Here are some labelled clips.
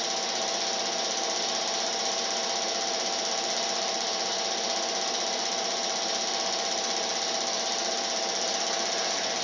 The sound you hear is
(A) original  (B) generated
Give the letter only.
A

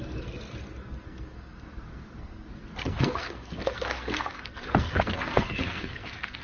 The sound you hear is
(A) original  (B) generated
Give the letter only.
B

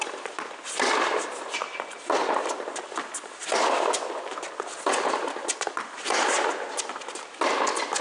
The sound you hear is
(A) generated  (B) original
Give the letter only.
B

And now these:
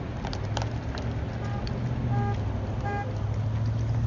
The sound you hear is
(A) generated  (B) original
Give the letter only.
B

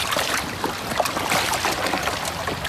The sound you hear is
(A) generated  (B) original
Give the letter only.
B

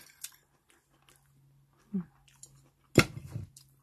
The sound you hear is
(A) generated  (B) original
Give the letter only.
B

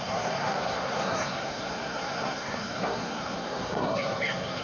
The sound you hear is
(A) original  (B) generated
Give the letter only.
B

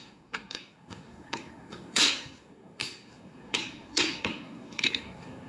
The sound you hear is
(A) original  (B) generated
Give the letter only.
B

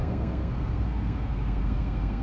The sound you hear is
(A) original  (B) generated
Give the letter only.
B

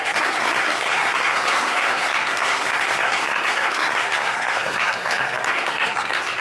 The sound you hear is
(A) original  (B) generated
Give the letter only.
B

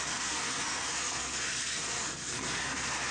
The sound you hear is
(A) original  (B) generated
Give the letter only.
B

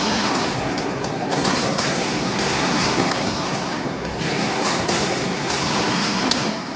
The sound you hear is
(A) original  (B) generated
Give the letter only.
B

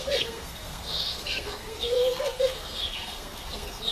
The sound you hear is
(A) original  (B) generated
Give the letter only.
B